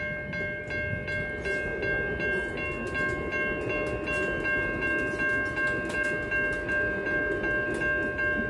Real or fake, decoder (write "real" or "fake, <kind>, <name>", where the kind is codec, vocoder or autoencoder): real